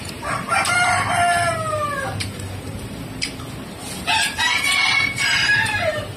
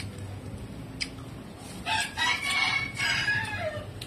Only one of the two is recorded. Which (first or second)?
second